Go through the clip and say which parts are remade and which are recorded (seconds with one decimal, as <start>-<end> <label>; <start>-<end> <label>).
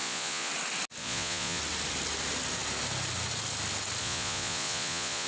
0.0-0.5 remade; 0.5-1.0 recorded; 1.0-1.6 remade; 1.6-4.0 recorded; 4.0-5.3 remade